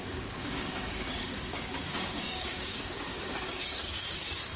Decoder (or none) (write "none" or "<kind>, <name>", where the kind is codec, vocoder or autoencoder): codec, DAC